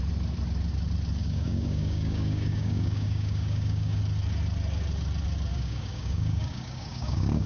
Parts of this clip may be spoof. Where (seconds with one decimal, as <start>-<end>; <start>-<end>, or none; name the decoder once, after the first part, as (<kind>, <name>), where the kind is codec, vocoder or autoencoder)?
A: 1.2-4.0 (codec, DAC); 5.5-7.5

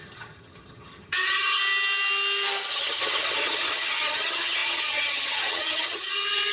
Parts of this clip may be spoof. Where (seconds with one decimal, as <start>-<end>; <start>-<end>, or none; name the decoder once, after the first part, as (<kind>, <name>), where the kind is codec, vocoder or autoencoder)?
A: 0.0-1.6 (vocoder, HiFi-GAN); 2.7-6.5

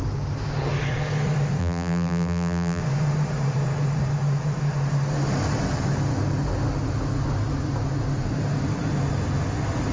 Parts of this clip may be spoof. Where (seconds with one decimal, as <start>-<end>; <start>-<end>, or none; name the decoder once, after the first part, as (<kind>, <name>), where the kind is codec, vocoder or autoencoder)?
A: 1.6-2.8 (vocoder, BigVGAN v2)

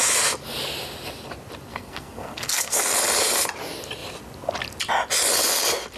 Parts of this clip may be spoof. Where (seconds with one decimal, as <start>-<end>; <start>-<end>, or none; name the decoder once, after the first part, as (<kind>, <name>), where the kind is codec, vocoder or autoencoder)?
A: 1.7-2.8 (codec, SNAC)

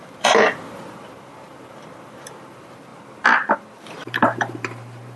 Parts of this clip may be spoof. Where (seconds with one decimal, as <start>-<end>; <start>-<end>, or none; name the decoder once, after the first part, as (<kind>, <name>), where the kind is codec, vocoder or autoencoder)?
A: 0.0-2.9 (vocoder, BigVGAN v2); 3.6-5.2

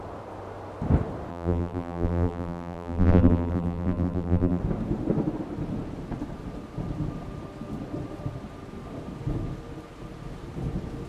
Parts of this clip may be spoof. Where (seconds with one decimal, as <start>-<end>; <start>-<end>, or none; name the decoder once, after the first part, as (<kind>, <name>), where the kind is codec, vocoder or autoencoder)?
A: 1.3-4.6 (vocoder, BigVGAN v2)

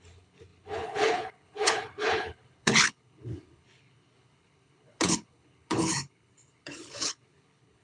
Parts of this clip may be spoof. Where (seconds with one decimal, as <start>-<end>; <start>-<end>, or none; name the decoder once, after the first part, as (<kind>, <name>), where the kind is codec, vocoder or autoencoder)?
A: 0.0-7.8 (codec, HILCodec)

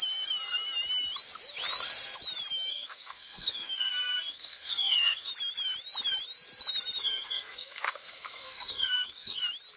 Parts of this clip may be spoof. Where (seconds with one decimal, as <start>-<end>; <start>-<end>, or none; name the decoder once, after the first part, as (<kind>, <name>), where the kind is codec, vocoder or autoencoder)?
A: 2.7-5.3 (codec, SNAC); 7.0-9.4